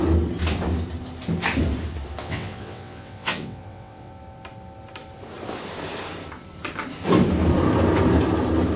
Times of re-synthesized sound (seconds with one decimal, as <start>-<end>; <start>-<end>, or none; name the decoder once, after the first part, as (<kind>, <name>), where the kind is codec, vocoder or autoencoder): 2.2-4.1 (vocoder, WaveNeXt)